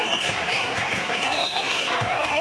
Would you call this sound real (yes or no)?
no